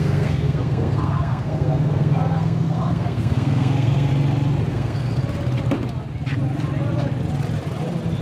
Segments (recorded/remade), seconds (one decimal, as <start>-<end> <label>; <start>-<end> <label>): 0.0-4.1 remade; 4.1-4.7 recorded; 4.7-5.2 remade; 5.2-8.2 recorded